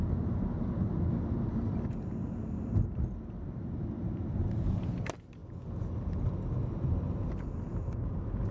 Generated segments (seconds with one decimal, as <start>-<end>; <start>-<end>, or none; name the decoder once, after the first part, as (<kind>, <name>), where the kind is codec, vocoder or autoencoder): none